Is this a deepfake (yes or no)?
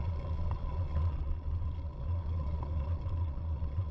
yes